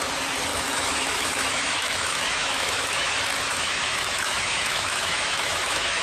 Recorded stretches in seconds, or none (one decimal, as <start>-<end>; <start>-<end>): 0.0-0.5; 3.1-3.5